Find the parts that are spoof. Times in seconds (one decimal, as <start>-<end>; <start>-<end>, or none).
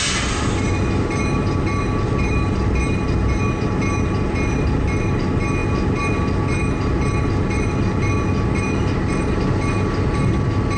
none